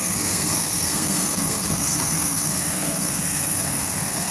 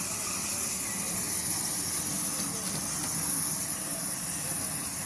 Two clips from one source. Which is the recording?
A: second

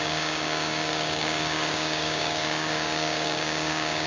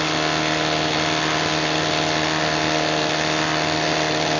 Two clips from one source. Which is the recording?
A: second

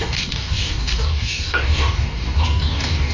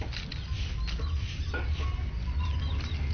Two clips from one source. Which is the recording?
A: second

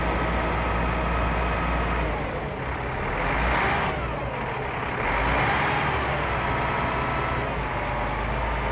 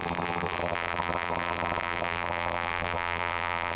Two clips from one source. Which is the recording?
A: first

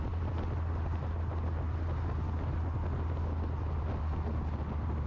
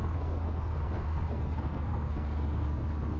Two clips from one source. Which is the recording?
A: first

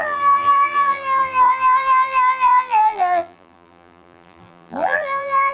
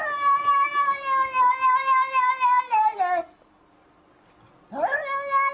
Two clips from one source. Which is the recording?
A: second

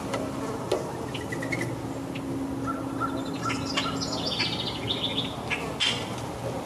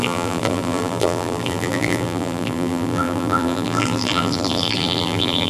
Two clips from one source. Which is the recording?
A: first